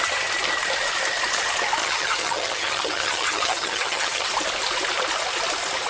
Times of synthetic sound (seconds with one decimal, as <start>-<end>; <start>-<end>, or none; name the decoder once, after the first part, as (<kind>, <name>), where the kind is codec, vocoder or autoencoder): 1.8-4.3 (vocoder, HiFi-GAN)